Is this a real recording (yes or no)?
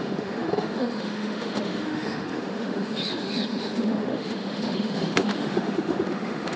no